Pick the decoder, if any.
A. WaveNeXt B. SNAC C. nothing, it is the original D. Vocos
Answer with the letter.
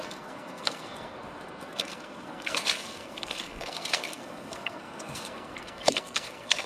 B